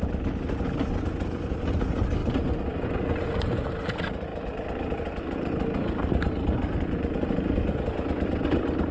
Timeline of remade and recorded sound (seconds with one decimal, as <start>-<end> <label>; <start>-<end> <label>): 0.0-2.2 recorded; 2.2-3.0 remade; 3.0-4.3 recorded; 4.3-8.4 remade; 8.4-8.9 recorded